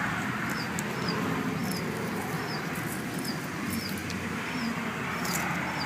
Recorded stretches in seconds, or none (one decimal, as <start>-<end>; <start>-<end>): 0.0-5.9